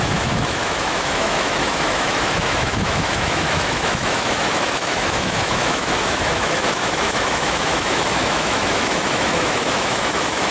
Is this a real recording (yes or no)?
no